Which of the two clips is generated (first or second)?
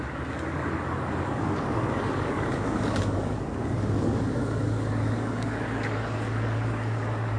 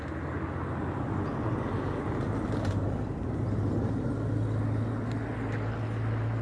first